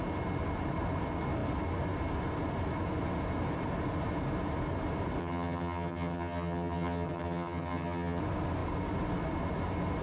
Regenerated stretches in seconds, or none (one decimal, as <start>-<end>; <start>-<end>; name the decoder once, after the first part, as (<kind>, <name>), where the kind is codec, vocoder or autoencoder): 5.2-8.2 (vocoder, HiFi-GAN)